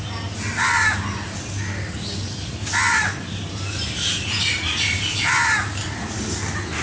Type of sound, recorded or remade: recorded